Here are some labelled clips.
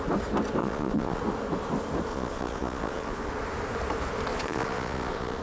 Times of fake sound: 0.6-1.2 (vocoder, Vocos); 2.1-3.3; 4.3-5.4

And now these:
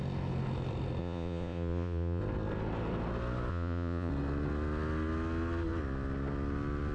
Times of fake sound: 1.0-2.2 (vocoder, Vocos); 3.5-4.1

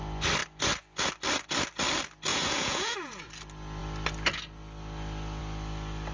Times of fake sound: 2.3-3.3 (vocoder, Vocos)

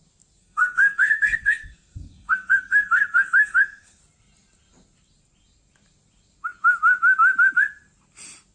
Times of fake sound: 0.4-4.0 (codec, SNAC)

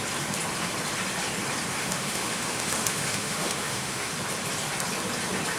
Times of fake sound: 1.8-4.1 (autoencoder, DAC-VAE)

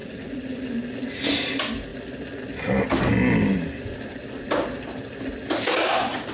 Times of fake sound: 0.0-0.6 (vocoder, Vocos)